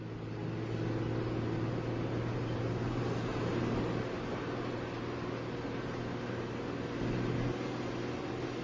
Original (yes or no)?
yes